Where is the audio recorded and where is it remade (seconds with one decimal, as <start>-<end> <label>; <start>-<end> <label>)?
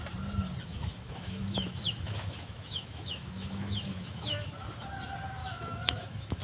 0.0-0.7 recorded; 0.7-4.5 remade; 4.5-5.4 recorded; 5.4-6.4 remade